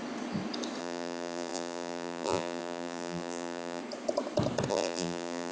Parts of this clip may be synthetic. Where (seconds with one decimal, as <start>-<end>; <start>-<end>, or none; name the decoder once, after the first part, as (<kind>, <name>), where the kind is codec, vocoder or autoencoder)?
0.8-3.8 (vocoder, BigVGAN v2); 4.7-5.5